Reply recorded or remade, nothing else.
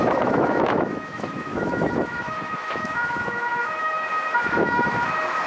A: remade